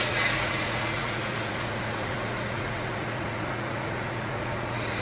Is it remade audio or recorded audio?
remade